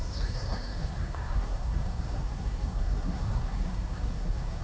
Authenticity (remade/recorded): remade